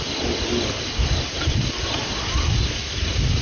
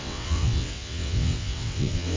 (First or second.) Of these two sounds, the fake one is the second